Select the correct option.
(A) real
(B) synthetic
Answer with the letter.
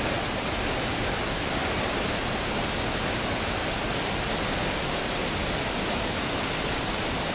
A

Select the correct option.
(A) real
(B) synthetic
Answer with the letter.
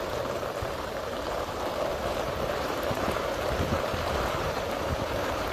B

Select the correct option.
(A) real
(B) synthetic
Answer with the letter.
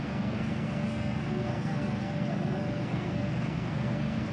B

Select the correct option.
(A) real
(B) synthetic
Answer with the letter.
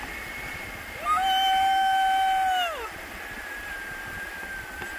A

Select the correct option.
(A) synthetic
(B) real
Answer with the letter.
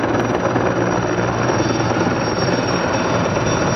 B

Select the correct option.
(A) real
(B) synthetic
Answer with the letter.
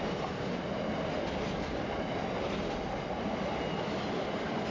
A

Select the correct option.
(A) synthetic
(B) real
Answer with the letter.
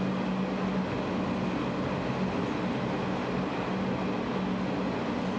B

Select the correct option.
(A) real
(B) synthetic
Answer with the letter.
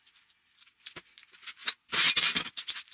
A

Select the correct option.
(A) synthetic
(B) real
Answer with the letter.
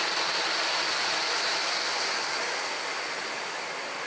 B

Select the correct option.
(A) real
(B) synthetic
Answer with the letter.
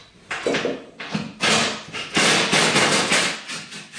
A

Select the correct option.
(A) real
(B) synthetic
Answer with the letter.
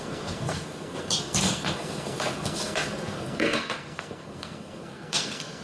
B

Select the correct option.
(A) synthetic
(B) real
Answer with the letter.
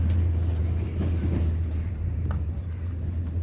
B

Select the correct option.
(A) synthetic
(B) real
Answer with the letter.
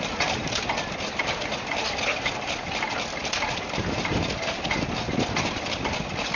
B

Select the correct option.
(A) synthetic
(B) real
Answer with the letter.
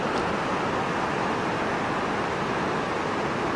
B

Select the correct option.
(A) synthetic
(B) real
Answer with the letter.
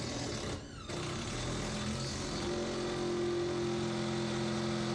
B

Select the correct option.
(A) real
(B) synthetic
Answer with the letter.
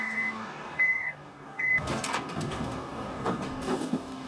B